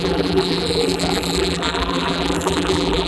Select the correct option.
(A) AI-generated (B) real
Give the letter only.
A